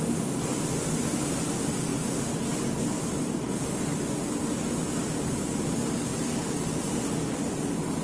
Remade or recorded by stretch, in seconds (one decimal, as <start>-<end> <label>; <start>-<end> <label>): 0.0-8.0 recorded